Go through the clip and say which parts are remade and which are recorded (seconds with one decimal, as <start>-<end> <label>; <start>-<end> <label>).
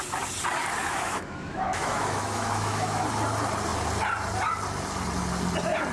0.0-0.8 recorded; 0.8-3.0 remade; 3.0-5.9 recorded